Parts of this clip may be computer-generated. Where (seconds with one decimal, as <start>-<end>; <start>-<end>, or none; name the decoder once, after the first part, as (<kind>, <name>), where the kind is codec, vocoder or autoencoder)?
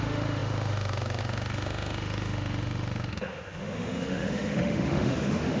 0.0-5.6 (autoencoder, DAC-VAE)